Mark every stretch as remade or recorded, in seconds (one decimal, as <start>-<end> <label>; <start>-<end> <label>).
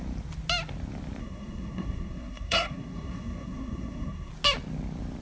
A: 0.0-1.2 recorded; 1.2-4.3 remade; 4.3-5.2 recorded